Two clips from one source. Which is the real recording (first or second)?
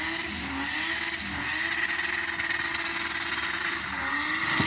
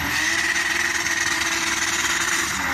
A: first